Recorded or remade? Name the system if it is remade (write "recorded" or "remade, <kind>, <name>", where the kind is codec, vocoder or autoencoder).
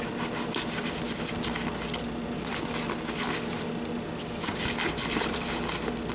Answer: recorded